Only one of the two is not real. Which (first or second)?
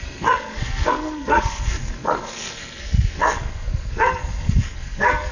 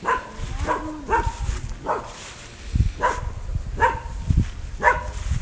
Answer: first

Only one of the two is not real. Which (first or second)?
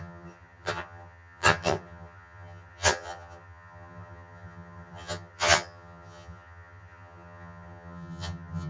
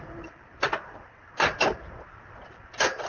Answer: first